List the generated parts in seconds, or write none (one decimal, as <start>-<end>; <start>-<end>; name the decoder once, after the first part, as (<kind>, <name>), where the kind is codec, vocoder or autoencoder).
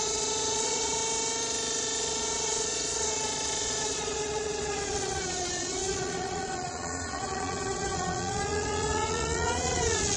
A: 0.0-1.0 (vocoder, Vocos); 2.0-10.2